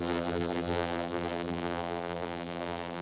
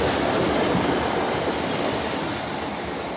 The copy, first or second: first